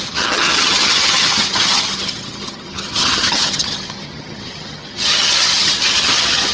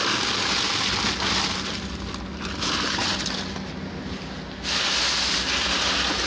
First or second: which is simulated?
first